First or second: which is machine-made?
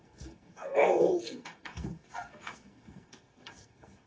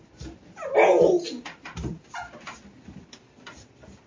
first